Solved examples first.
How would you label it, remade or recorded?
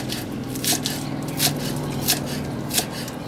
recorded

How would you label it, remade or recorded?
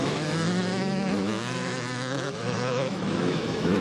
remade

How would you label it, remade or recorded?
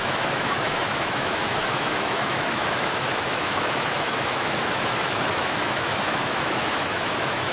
remade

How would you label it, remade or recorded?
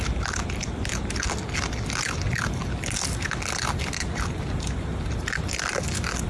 recorded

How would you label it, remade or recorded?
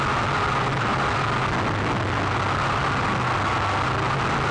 recorded